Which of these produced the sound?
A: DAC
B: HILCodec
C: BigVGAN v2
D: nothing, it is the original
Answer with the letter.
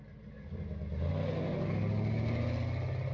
D